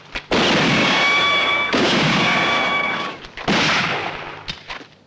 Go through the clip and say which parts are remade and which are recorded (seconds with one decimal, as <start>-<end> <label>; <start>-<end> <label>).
0.0-0.8 recorded; 0.8-3.2 remade; 3.2-5.1 recorded